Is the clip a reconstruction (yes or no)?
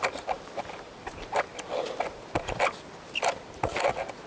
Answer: no